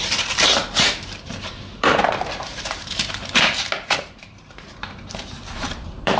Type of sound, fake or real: fake